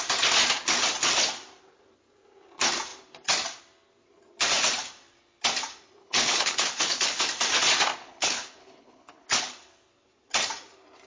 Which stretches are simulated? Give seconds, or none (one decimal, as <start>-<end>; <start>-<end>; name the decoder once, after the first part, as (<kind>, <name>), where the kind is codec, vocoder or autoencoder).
6.0-7.2 (codec, HILCodec); 8.0-9.4

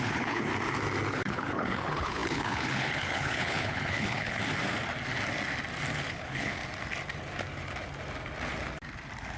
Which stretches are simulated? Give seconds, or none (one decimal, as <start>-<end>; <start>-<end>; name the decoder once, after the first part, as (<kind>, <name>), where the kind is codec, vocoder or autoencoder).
0.0-0.5 (codec, HILCodec); 1.1-4.4; 6.1-6.6

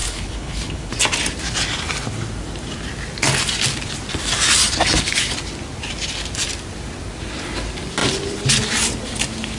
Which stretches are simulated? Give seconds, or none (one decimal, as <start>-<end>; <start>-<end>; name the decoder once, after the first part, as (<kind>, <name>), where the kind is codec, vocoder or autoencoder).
0.0-0.9 (codec, HILCodec)

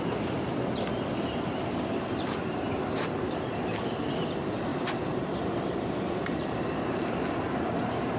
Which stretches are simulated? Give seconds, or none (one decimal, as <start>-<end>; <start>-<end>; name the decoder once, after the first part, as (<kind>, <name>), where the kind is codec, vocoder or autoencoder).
none

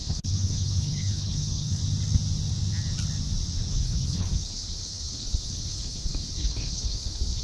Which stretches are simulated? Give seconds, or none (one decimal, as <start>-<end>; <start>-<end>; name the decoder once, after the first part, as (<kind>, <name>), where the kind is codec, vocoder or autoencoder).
0.0-1.8 (codec, HILCodec); 3.7-7.4

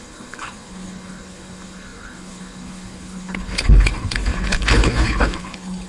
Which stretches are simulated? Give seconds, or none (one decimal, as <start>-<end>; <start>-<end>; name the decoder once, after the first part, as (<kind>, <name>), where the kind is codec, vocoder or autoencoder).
0.0-5.9 (codec, HILCodec)

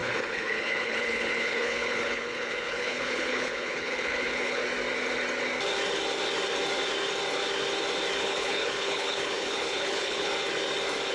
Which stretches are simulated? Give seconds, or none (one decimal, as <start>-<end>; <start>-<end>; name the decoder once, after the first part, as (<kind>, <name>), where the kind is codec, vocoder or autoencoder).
0.0-4.6 (codec, HILCodec); 8.2-10.3